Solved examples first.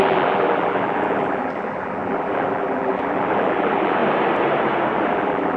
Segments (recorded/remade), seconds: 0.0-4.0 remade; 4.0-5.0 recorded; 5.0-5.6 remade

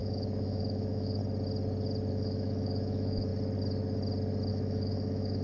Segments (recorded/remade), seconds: 0.0-1.2 remade; 1.2-2.1 recorded; 2.1-3.3 remade; 3.3-4.5 recorded; 4.5-5.4 remade

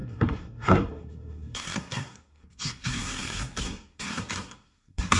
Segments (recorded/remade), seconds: 0.0-5.2 remade

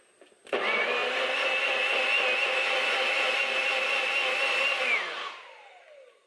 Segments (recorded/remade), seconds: 0.0-6.3 recorded

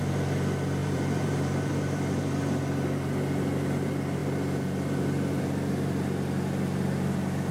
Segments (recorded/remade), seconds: 0.0-0.8 recorded; 0.8-2.6 remade; 2.6-7.5 recorded

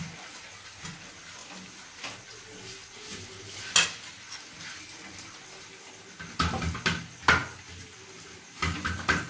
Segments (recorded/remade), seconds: 0.0-9.3 recorded